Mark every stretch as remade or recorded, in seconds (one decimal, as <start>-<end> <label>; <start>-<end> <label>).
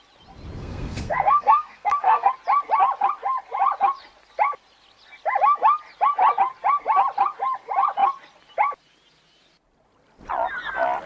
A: 0.0-0.6 recorded; 0.6-2.3 remade; 2.3-11.1 recorded